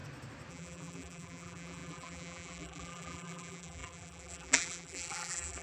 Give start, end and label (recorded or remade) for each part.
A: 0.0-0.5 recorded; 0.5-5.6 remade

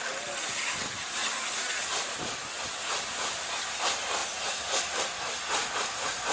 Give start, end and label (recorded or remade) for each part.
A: 0.0-6.3 recorded

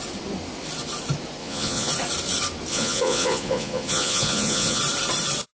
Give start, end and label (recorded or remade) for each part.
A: 0.0-1.4 recorded; 1.4-1.9 remade; 1.9-2.7 recorded; 2.7-4.8 remade; 4.8-5.5 recorded

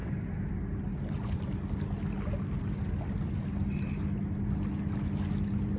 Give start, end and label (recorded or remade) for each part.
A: 0.0-5.8 recorded